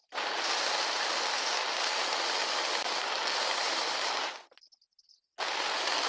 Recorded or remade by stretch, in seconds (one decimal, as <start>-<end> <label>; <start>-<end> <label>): 0.0-6.1 recorded